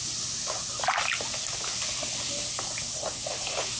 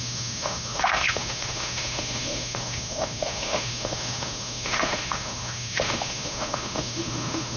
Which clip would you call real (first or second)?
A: first